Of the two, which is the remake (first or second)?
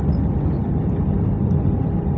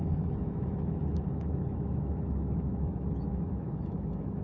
second